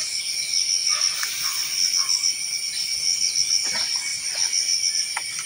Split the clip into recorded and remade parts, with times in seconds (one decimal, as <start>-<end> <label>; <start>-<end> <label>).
0.0-5.5 recorded